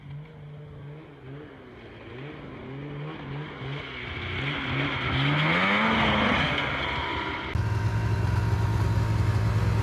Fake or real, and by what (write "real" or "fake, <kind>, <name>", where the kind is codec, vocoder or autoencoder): real